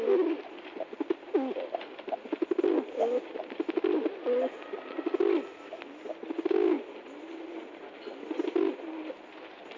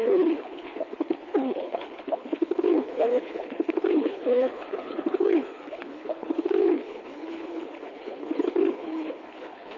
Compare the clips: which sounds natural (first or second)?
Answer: first